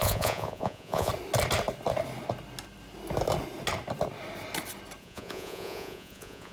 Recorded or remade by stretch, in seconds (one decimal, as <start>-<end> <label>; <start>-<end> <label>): 0.0-1.1 remade; 1.1-5.0 recorded; 5.0-6.5 remade